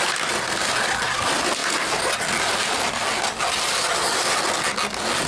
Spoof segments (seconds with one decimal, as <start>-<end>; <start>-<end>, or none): none